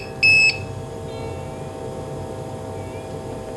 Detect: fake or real real